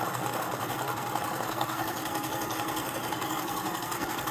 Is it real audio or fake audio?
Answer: fake